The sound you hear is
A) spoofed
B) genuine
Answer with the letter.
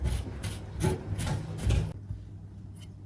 B